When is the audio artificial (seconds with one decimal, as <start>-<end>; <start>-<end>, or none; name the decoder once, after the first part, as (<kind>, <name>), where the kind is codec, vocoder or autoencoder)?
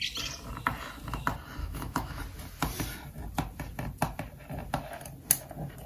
1.6-2.2 (autoencoder, DAC-VAE)